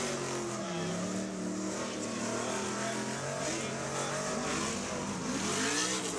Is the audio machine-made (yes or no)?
no